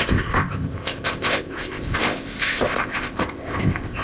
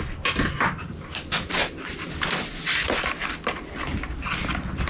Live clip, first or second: second